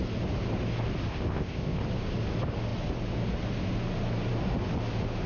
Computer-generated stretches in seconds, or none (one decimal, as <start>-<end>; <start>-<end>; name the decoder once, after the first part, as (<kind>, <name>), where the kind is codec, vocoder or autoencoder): 1.1-1.8 (codec, ZipCodec)